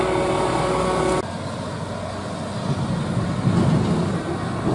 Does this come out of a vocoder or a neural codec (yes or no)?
no